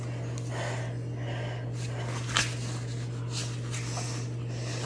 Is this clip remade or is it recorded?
recorded